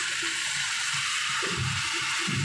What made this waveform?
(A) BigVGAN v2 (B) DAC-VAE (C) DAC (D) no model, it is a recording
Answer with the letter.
A